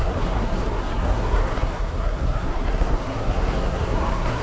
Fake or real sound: fake